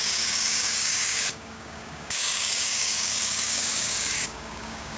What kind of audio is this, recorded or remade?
remade